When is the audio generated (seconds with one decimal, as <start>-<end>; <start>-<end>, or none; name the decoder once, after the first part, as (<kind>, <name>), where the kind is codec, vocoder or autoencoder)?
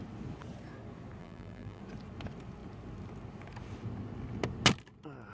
1.2-1.8 (vocoder, BigVGAN v2)